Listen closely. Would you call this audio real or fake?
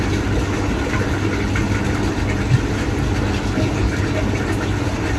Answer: real